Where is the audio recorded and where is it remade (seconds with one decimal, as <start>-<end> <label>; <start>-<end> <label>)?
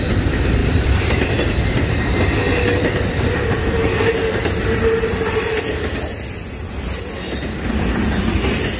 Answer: 0.0-0.6 recorded; 0.6-1.9 remade; 1.9-5.5 recorded; 5.5-6.1 remade; 6.1-8.8 recorded